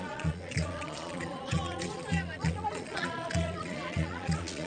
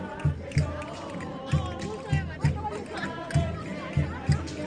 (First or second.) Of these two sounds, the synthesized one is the first